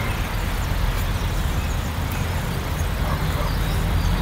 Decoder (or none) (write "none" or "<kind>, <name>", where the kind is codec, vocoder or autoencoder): none